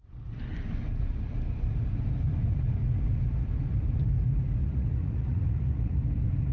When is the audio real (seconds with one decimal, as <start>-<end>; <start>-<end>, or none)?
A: 0.0-4.6; 6.0-6.5